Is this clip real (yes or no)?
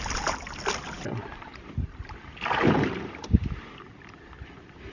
yes